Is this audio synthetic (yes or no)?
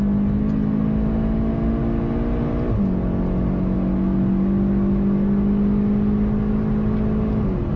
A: no